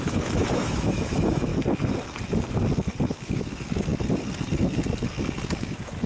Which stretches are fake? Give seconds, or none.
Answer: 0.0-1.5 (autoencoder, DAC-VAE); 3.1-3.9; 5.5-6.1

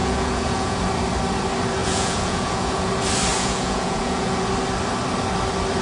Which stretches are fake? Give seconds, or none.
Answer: 0.0-0.8 (vocoder, Vocos); 1.8-2.9; 3.3-4.5